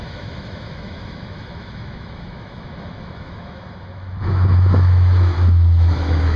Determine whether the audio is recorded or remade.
remade